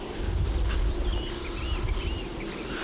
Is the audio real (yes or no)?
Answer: yes